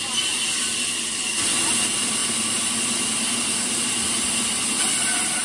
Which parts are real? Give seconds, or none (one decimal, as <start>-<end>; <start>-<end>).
0.0-5.4